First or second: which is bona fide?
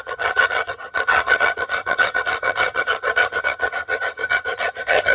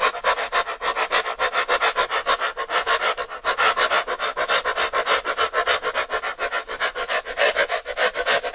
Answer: second